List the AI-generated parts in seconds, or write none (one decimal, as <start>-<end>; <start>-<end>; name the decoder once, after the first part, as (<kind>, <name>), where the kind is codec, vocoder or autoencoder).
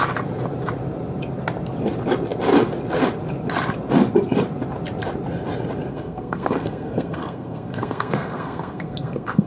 5.9-9.5 (codec, SNAC)